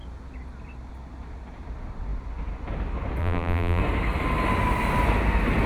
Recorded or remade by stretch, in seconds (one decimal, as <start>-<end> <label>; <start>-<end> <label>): 0.0-3.2 recorded; 3.2-3.8 remade; 3.8-5.7 recorded